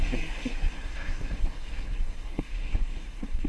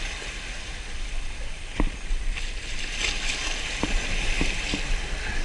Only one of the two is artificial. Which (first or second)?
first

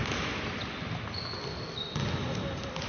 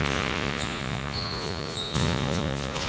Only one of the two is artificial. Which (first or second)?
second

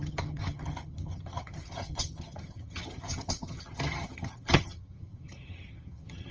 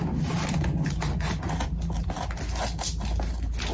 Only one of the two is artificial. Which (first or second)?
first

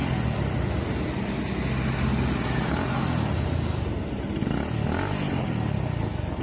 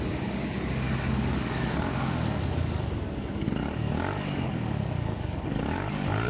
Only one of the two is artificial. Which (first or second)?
second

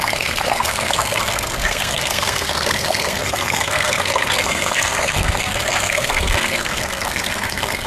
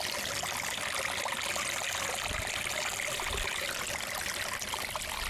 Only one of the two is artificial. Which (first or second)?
first